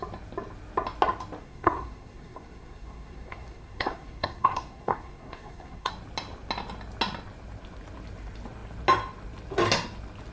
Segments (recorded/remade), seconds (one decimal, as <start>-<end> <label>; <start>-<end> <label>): 0.0-1.4 recorded; 1.4-5.9 remade; 5.9-10.3 recorded